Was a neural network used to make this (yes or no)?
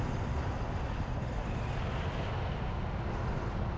no